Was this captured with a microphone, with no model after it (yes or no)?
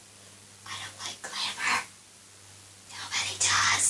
yes